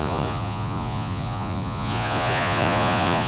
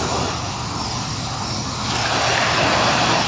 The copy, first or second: first